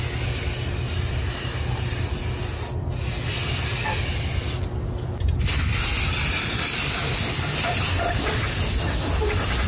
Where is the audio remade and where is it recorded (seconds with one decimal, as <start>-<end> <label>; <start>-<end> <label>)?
0.0-9.7 recorded